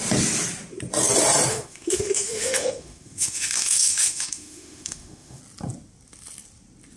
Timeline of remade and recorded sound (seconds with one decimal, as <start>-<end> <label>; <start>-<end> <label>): 0.0-1.5 recorded; 1.5-5.4 remade; 5.4-7.0 recorded